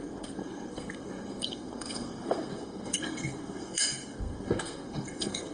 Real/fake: fake